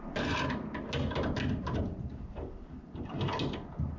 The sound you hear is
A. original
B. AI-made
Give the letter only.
A